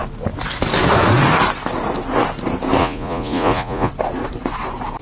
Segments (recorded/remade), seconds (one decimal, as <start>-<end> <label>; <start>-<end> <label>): 0.0-2.8 recorded; 2.8-3.9 remade; 3.9-5.0 recorded